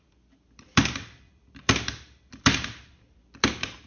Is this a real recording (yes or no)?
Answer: no